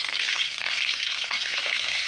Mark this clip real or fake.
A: fake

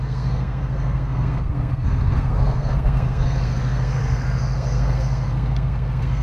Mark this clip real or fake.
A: fake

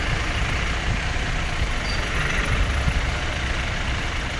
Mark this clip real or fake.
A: real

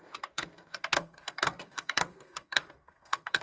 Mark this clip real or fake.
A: fake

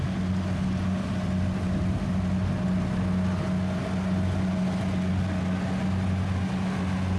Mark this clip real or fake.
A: real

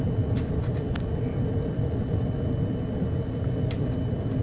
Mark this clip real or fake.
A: real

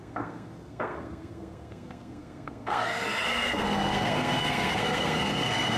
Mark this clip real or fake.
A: fake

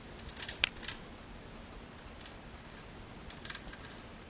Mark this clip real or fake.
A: real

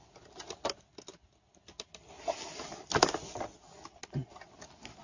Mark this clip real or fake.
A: real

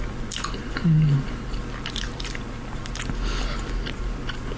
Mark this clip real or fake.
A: real